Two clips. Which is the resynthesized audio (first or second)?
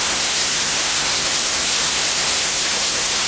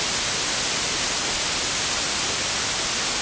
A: first